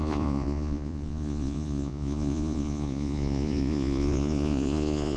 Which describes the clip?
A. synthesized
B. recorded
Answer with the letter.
A